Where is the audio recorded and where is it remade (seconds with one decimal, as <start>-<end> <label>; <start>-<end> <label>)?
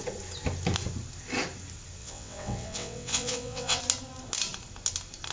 0.0-2.0 recorded; 2.0-3.8 remade; 3.8-5.3 recorded